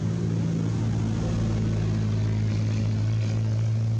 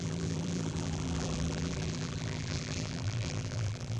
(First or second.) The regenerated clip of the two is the second